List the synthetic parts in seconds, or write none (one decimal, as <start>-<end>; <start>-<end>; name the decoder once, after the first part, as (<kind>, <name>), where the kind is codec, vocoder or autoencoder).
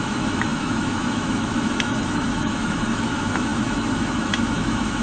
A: 0.0-5.0 (autoencoder, DAC-VAE)